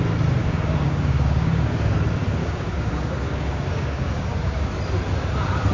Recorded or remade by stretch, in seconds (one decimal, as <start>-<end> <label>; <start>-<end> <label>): 0.0-0.4 recorded; 0.4-1.9 remade; 1.9-2.4 recorded; 2.4-4.7 remade; 4.7-5.7 recorded